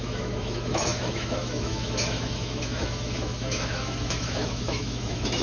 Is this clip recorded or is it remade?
remade